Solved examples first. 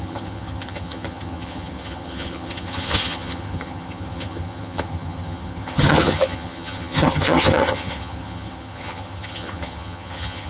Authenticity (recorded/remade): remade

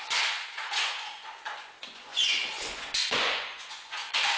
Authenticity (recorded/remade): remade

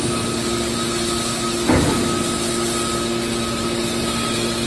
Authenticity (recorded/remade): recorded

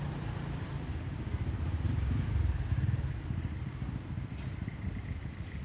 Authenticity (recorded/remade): recorded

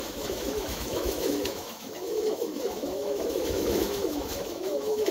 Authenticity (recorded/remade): remade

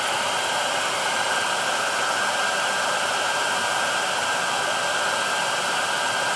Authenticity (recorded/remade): recorded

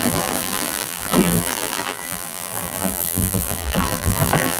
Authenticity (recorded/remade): remade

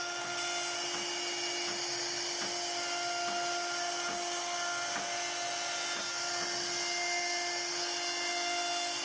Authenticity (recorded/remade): recorded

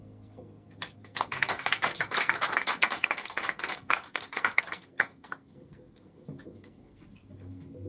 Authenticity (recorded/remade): remade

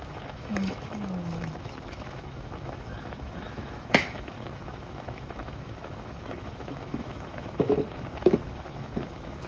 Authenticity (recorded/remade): remade